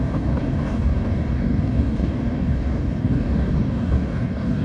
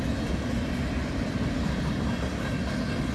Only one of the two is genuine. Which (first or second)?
second